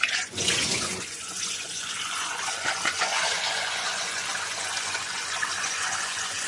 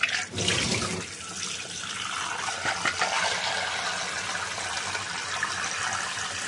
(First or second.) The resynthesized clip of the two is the first